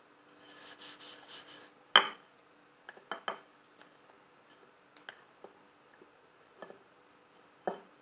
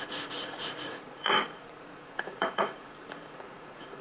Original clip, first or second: first